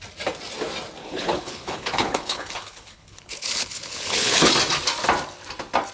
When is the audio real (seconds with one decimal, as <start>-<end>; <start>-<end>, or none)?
0.0-1.0; 4.5-5.9

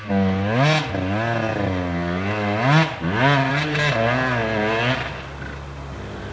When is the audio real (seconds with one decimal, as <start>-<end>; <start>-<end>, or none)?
0.0-6.3